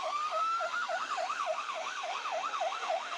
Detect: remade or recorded remade